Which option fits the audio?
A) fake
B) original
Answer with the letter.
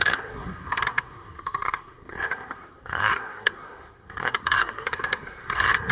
A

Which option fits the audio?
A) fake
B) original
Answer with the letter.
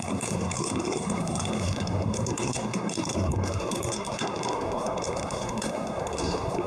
A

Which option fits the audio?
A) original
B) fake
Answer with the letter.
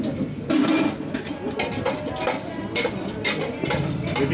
A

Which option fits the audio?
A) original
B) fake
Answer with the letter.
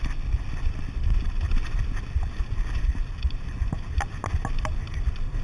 A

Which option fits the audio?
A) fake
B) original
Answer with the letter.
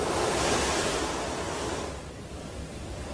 B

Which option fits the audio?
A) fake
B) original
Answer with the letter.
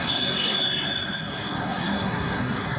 A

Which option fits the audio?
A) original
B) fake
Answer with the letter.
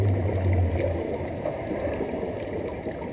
A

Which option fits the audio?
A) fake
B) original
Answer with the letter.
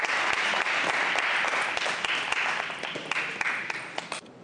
B